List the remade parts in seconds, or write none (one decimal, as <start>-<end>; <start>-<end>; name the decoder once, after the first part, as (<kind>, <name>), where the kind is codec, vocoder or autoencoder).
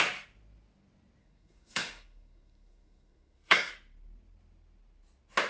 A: 1.2-3.7 (codec, SNAC)